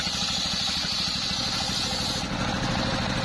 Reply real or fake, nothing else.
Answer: real